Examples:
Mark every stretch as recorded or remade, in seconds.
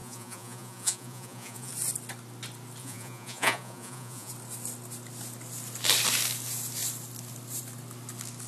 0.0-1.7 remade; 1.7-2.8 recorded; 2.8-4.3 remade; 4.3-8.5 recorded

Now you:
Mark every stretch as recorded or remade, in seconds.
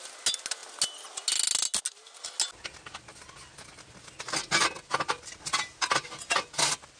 0.0-7.0 recorded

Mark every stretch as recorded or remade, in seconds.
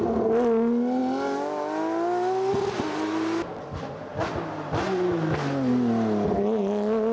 0.0-7.1 recorded